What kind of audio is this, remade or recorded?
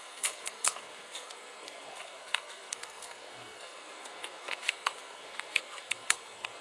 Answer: remade